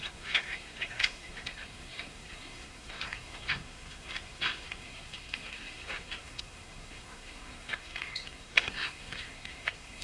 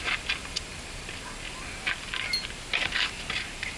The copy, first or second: first